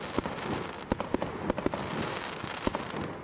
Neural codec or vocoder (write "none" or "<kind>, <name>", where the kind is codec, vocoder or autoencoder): vocoder, BigVGAN v2